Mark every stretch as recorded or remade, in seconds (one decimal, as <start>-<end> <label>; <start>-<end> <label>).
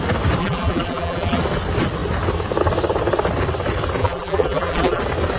0.0-0.4 recorded; 0.4-1.4 remade; 1.4-4.0 recorded; 4.0-5.0 remade; 5.0-5.4 recorded